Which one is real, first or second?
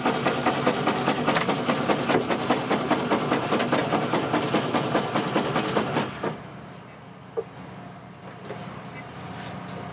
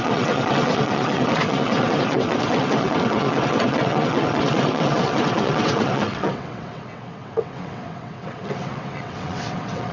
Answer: first